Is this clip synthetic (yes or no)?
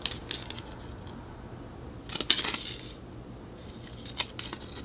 no